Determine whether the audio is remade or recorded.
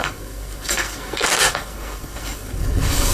remade